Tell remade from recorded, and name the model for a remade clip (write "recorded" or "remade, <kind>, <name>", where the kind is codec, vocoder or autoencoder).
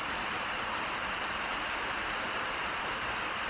remade, vocoder, BigVGAN v2